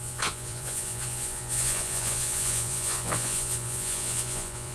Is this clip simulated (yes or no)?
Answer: yes